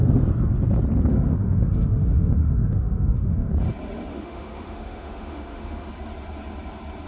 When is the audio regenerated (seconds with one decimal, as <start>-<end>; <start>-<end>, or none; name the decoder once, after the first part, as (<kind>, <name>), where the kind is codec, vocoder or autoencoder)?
1.1-3.5 (autoencoder, DAC-VAE); 4.1-5.9